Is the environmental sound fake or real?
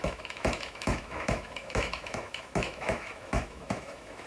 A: fake